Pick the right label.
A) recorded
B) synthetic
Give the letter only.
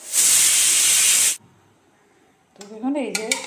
A